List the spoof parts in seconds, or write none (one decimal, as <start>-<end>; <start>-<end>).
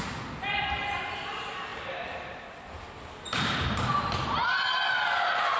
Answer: none